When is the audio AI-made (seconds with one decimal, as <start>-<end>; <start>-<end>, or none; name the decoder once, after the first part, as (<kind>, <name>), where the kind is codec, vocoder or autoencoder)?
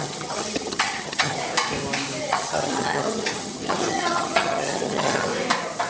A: 0.0-1.4 (vocoder, HiFi-GAN); 2.2-5.3